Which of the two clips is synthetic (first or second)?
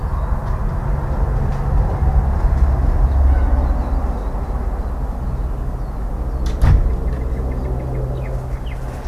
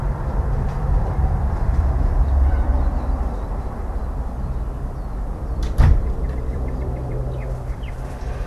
second